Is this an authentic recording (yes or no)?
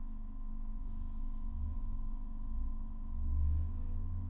no